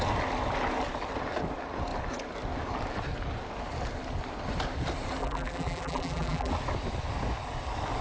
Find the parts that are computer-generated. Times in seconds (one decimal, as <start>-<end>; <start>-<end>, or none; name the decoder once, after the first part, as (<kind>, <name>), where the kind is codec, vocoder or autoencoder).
5.2-6.5 (vocoder, BigVGAN v2)